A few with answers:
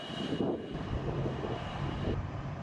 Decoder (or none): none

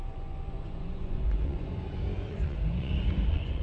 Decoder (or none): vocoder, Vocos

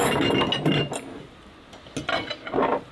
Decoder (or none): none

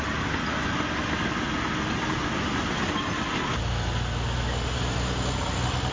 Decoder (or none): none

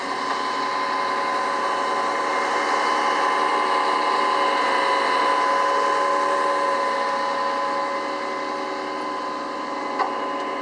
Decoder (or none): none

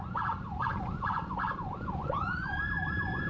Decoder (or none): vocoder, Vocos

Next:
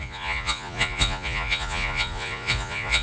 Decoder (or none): vocoder, Vocos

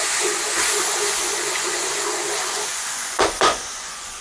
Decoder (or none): vocoder, Vocos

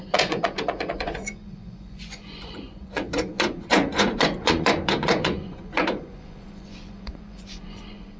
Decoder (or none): vocoder, Vocos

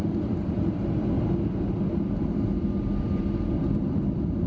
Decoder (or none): none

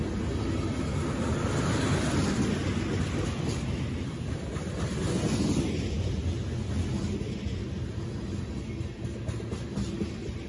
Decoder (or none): none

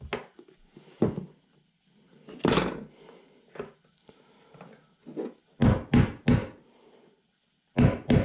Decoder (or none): none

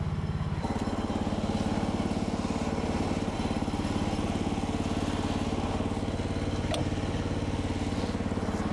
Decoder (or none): none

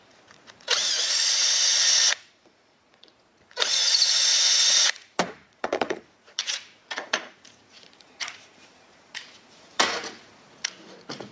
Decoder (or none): vocoder, Vocos